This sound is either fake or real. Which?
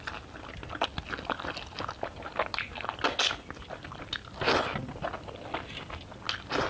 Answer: real